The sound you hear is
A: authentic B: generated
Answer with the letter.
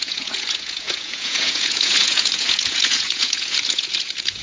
B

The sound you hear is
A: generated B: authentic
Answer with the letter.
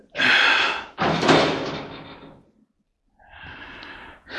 B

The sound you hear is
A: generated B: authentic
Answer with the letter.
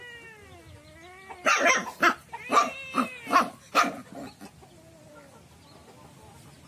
B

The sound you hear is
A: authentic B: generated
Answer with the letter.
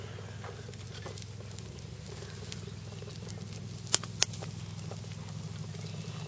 A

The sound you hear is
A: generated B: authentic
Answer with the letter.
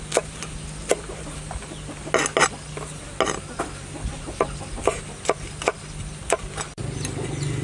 B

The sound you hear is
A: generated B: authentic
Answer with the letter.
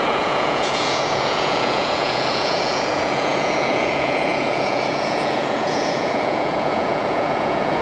A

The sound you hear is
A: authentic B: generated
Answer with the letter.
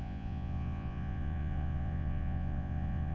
B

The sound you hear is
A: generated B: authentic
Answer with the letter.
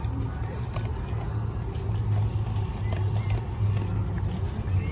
B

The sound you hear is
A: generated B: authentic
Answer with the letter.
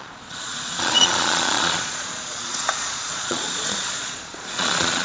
A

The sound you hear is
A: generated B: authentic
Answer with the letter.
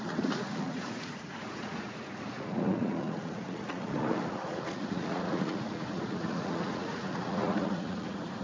A